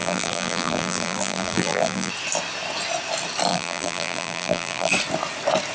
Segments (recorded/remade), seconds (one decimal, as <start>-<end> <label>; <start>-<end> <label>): 0.0-2.1 remade; 2.1-3.5 recorded; 3.5-4.9 remade; 4.9-5.7 recorded